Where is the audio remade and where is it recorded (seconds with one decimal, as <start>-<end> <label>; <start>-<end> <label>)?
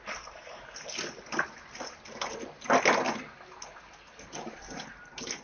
0.0-5.4 recorded